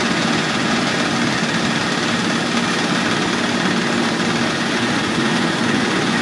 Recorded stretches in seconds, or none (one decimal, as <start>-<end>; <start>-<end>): 0.9-4.5

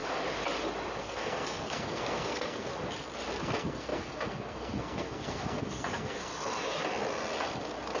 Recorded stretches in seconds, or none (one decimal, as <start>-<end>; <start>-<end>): 0.0-1.0; 2.7-3.4; 6.3-8.0

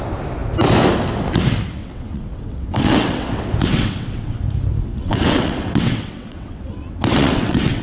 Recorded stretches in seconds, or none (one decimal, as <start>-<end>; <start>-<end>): 0.0-1.8; 3.3-3.7; 4.4-4.9

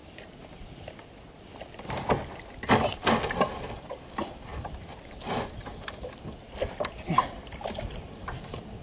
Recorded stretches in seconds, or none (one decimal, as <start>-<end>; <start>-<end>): 0.0-8.8

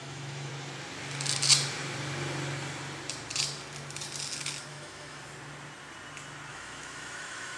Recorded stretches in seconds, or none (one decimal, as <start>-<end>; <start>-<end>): 0.5-4.7; 5.2-6.5

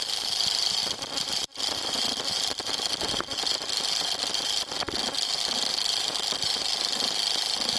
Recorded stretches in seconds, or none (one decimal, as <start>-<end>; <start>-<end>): 0.0-7.8

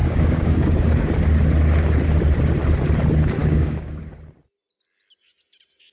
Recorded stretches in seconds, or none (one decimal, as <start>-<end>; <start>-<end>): 1.1-3.4; 4.1-5.9

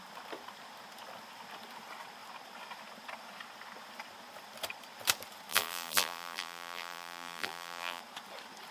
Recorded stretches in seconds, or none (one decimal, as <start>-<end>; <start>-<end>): 0.0-5.5; 8.0-8.7